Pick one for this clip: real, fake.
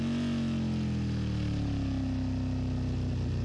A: real